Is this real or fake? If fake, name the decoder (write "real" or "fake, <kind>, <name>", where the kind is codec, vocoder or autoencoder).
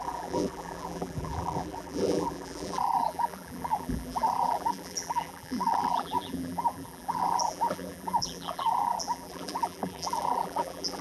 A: fake, vocoder, BigVGAN v2